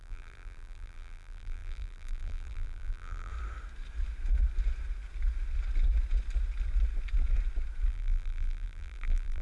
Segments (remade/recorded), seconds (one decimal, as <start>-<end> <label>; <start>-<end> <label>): 0.0-3.3 remade; 3.3-7.9 recorded; 7.9-9.4 remade